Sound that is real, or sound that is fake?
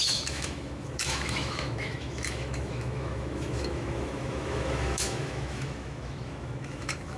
fake